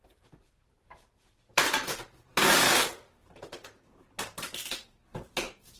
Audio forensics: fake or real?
fake